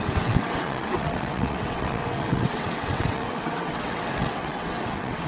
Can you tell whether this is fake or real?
fake